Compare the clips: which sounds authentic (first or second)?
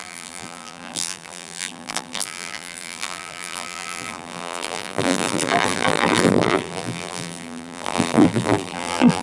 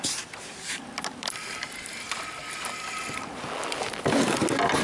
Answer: second